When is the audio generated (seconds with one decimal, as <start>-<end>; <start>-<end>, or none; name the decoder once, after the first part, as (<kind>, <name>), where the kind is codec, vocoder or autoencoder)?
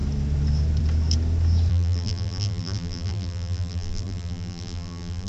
1.7-5.3 (vocoder, BigVGAN v2)